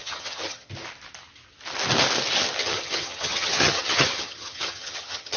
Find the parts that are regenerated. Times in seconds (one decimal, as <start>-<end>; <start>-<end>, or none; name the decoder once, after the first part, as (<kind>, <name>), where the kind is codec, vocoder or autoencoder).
0.0-0.7 (vocoder, HiFi-GAN); 2.6-5.4